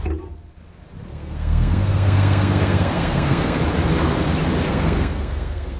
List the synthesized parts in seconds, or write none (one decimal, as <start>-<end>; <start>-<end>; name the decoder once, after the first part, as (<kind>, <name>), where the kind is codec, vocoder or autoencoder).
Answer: 1.1-3.6 (codec, SNAC); 4.7-5.8